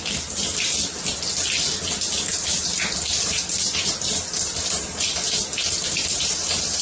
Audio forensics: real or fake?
real